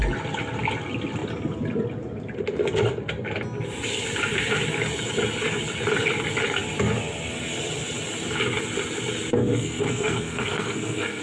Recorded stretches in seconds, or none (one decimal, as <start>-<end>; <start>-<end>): 0.0-9.4